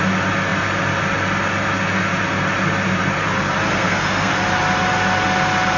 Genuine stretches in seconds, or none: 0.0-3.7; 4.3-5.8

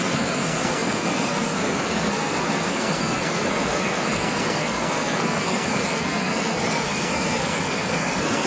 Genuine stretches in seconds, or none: none